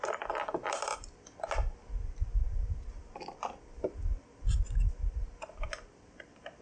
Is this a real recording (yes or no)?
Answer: yes